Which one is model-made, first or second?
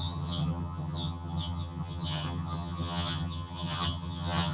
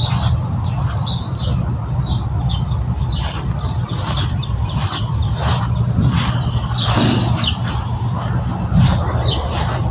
first